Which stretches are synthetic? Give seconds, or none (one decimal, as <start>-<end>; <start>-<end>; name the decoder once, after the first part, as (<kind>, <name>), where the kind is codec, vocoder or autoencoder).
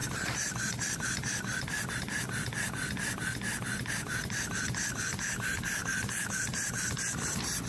0.0-1.9 (vocoder, BigVGAN v2)